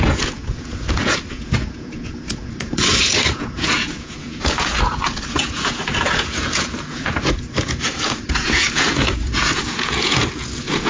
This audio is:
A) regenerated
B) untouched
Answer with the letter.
A